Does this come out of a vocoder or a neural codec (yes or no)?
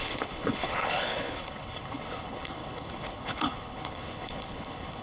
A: yes